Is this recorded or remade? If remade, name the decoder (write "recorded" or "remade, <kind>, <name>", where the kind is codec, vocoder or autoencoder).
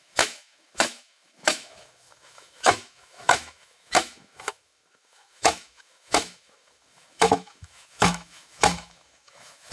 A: remade, autoencoder, DAC-VAE